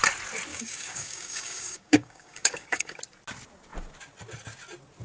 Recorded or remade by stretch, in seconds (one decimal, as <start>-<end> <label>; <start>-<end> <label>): 0.0-0.5 recorded; 0.5-3.0 remade; 3.0-5.0 recorded